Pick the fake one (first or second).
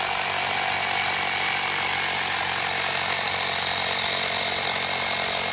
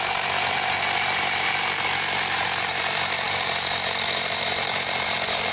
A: second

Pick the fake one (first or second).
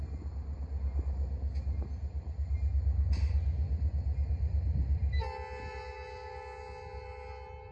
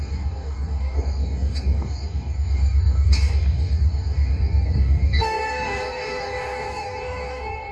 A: second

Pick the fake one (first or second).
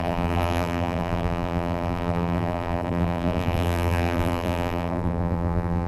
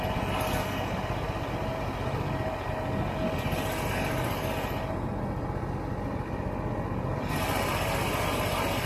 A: first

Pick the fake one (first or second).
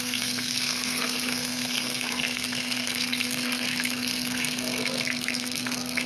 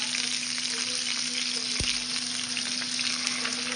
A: first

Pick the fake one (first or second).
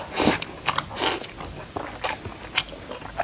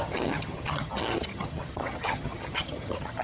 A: second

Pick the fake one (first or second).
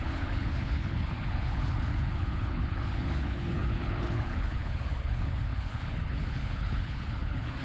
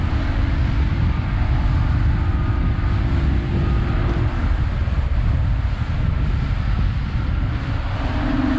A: first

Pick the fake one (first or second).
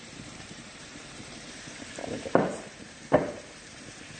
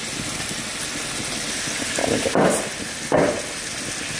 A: first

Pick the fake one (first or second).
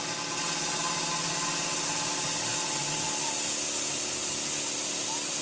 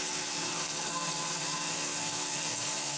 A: second